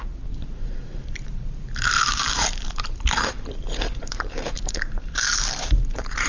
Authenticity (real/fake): fake